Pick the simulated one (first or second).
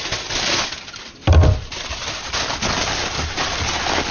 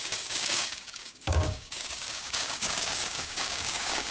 second